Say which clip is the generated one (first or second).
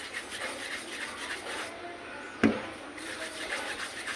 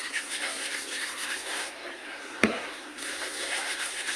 second